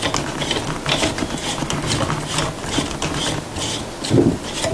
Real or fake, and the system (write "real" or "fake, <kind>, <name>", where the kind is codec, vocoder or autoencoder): real